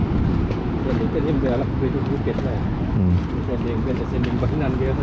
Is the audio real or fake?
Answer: real